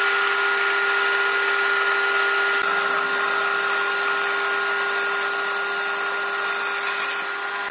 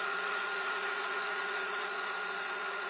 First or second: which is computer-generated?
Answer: second